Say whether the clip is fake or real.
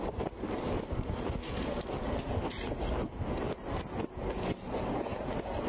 real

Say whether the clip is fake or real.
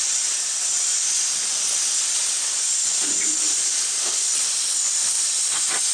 fake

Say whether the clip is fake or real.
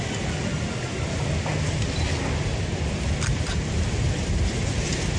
real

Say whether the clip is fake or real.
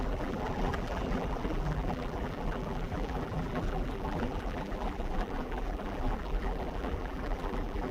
fake